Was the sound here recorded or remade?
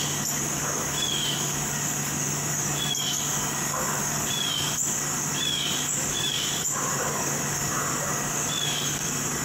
remade